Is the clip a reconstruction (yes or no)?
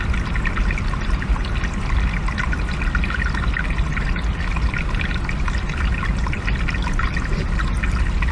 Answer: no